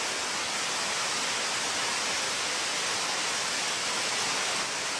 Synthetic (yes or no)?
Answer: no